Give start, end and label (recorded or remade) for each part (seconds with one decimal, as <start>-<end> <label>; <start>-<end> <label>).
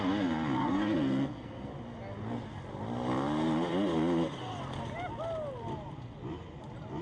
0.0-0.6 recorded; 0.6-1.7 remade; 1.7-7.0 recorded